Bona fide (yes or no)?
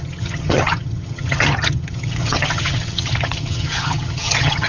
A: no